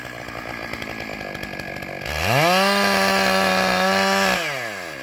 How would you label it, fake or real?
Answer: real